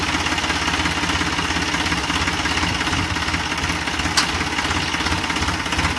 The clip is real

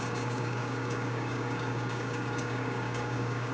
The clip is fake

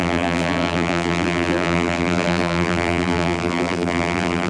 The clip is fake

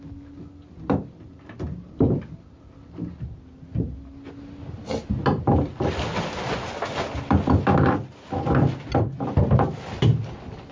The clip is real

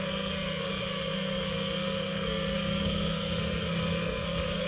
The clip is fake